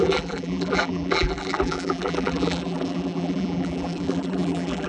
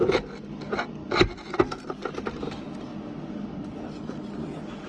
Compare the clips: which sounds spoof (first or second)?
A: first